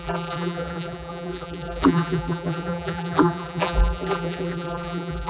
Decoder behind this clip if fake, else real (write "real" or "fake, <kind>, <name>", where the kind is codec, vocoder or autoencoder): fake, vocoder, BigVGAN v2